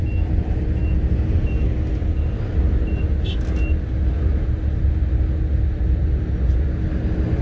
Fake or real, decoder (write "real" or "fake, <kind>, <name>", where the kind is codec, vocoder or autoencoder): real